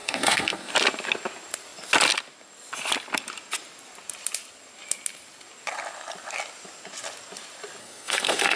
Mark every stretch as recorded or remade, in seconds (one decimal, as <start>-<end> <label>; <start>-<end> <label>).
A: 0.0-0.7 remade; 0.7-7.8 recorded; 7.8-8.6 remade